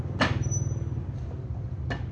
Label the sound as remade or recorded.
recorded